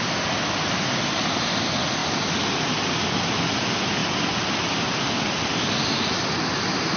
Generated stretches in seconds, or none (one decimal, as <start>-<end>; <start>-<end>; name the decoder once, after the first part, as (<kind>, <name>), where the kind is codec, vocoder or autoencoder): none